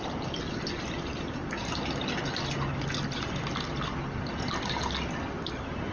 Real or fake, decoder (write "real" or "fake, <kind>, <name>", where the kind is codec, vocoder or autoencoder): real